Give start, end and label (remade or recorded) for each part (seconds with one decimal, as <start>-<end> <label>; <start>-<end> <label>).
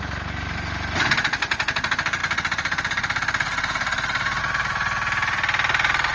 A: 0.0-6.1 recorded